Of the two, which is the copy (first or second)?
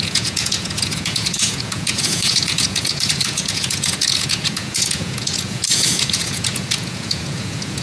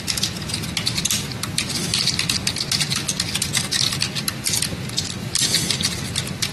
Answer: first